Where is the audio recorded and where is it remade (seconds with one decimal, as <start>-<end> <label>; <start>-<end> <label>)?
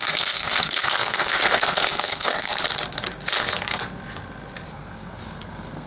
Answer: 0.0-2.5 remade; 2.5-4.7 recorded; 4.7-5.9 remade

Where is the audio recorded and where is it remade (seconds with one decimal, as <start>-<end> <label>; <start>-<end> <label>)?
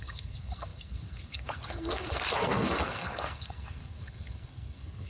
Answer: 0.0-5.1 remade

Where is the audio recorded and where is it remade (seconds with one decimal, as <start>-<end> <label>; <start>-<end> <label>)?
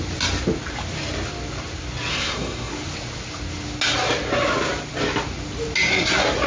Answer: 0.0-2.1 recorded; 2.1-2.7 remade; 2.7-6.5 recorded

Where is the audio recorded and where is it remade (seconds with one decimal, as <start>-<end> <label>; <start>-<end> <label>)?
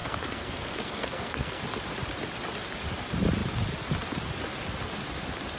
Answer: 0.0-1.6 remade; 1.6-5.6 recorded